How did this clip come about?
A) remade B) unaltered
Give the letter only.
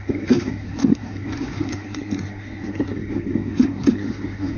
A